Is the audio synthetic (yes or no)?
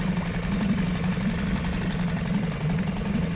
yes